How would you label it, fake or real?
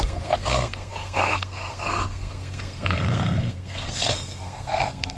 fake